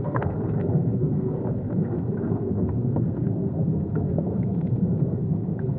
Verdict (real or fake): fake